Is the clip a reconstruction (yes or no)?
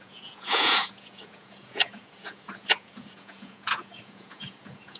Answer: yes